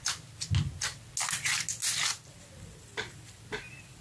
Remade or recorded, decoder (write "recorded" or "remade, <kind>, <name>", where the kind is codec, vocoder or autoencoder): recorded